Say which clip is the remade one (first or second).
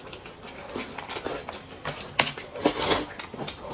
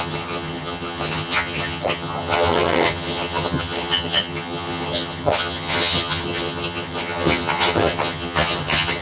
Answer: second